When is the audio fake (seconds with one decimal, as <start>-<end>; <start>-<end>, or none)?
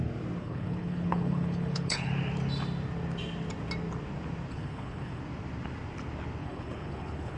0.4-2.1; 4.5-5.2; 6.4-7.4